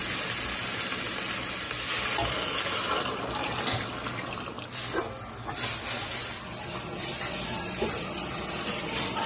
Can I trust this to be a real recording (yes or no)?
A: yes